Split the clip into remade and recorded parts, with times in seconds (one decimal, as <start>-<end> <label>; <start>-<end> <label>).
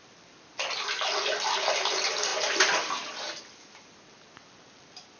0.0-5.2 recorded